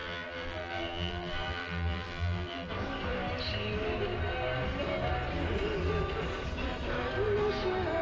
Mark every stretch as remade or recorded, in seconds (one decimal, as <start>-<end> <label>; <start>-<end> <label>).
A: 0.0-2.7 remade; 2.7-8.0 recorded